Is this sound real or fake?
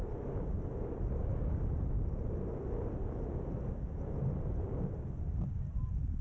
real